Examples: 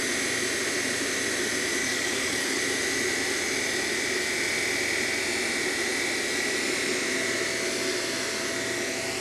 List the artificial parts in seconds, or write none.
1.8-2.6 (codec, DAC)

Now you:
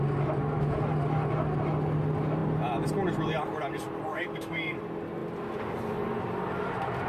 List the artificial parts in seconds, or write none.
4.1-4.8 (autoencoder, DAC-VAE)

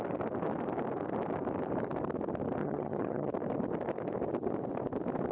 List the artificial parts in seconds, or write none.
2.6-3.3 (vocoder, HiFi-GAN)

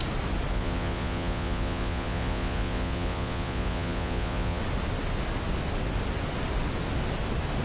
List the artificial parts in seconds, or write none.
0.5-4.6 (vocoder, Vocos)

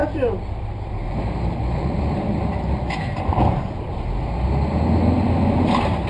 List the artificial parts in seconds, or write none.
0.0-3.7 (vocoder, BigVGAN v2)

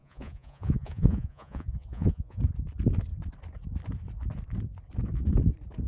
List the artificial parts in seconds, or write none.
0.0-2.4 (vocoder, Vocos)

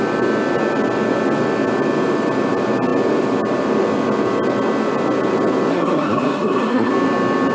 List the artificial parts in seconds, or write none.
5.7-6.9 (codec, SNAC)

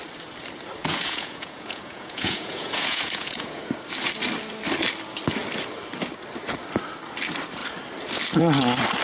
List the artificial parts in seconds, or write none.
0.8-3.6 (vocoder, Vocos)